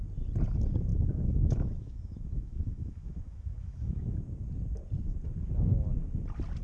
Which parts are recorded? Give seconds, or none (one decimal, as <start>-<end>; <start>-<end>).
0.0-0.9; 4.2-6.6